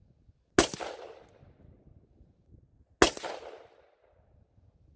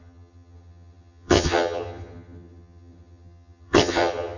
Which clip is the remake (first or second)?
second